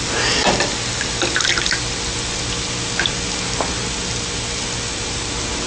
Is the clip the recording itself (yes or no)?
yes